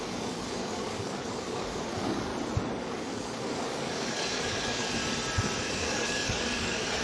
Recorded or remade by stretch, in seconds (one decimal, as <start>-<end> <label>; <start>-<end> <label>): 0.0-2.3 remade; 2.3-2.8 recorded; 2.8-5.0 remade; 5.0-5.7 recorded; 5.7-7.0 remade